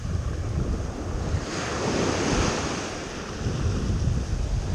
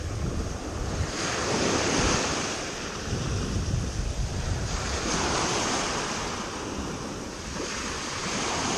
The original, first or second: first